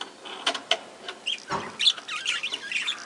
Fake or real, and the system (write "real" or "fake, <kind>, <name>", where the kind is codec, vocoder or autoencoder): real